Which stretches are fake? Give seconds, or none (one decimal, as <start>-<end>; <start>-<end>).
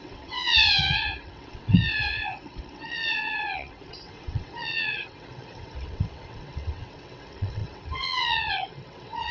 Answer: 0.0-9.3